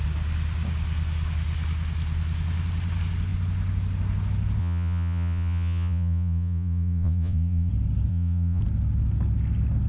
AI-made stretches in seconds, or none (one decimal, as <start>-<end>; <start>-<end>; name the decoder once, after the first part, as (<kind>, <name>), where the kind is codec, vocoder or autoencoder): 4.6-7.7 (vocoder, Vocos); 8.1-8.6